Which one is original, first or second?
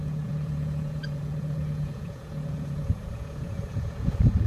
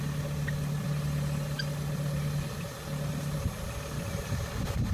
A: second